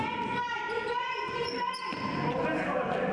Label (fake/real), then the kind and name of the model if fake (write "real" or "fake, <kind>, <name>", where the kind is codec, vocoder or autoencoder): real